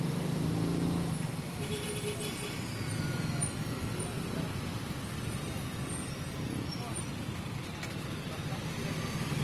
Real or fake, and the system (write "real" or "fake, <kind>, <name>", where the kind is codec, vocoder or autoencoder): real